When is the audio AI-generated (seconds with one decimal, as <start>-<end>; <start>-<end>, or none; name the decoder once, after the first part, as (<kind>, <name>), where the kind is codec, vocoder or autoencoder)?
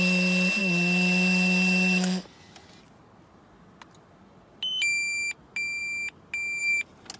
none